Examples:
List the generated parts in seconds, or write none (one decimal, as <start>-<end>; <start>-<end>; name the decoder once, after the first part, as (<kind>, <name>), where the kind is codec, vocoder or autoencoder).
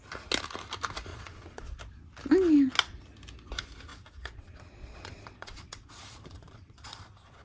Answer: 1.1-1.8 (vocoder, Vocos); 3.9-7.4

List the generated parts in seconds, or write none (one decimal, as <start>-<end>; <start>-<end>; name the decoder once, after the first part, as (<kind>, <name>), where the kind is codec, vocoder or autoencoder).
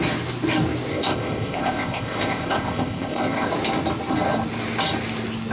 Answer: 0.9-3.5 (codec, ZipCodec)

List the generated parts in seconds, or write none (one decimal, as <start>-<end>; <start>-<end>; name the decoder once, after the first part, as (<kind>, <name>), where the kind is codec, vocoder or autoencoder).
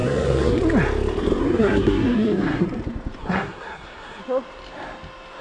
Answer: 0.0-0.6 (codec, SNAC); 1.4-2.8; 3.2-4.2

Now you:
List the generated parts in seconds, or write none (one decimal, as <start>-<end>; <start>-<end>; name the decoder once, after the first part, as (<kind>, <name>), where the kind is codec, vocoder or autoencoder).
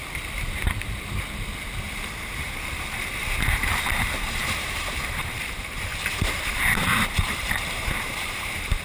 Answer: 2.4-8.8 (vocoder, BigVGAN v2)